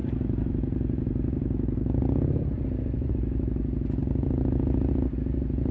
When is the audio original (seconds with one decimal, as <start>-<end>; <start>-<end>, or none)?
3.1-4.0; 4.9-5.7